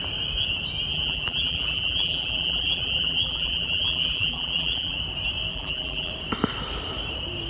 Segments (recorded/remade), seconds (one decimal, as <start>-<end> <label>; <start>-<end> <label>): 0.0-0.9 recorded; 0.9-5.0 remade; 5.0-5.5 recorded; 5.5-6.1 remade; 6.1-7.5 recorded